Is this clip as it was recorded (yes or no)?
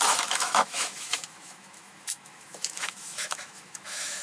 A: no